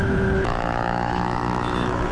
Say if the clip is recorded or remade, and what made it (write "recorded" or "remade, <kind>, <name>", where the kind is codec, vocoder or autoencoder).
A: remade, autoencoder, DAC-VAE